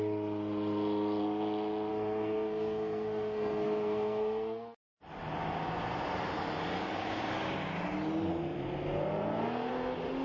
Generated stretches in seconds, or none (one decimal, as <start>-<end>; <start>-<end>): 1.9-5.0